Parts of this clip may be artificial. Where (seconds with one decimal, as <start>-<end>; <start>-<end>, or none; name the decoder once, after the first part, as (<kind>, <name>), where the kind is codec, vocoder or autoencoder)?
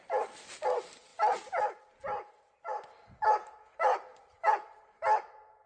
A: none